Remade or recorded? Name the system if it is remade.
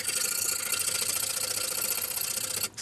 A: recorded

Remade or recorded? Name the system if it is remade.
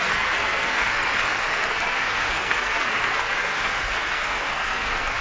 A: remade, codec, SNAC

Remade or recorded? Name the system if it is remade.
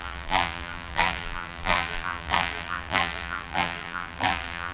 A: remade, vocoder, BigVGAN v2